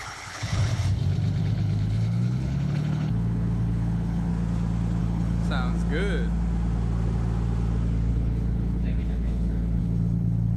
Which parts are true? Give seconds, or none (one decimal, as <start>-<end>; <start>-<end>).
0.7-1.4; 4.3-5.0; 5.4-8.1